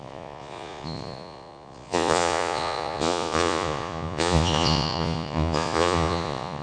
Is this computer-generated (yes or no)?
yes